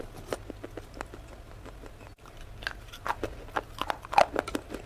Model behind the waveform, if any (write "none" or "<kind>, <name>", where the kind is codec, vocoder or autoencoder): none